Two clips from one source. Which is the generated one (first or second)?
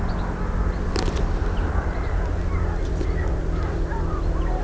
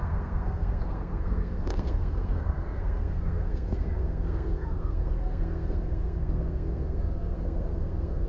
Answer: second